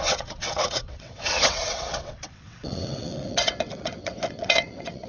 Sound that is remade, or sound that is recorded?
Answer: remade